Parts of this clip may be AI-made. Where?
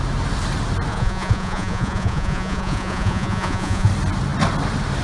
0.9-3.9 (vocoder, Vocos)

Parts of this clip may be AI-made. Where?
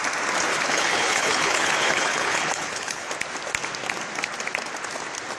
0.5-3.1 (codec, HILCodec)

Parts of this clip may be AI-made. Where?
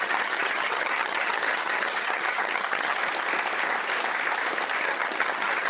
0.0-3.0 (vocoder, HiFi-GAN); 4.8-5.7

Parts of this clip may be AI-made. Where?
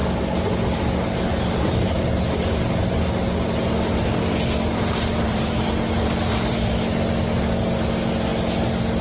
none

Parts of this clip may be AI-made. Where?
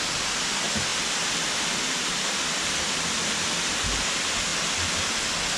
none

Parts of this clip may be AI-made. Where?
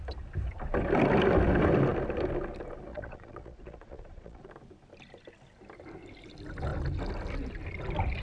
2.9-4.5 (vocoder, Vocos)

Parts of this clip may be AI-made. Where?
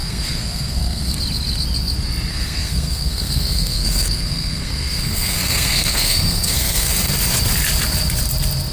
0.0-1.2 (codec, SNAC); 2.3-6.9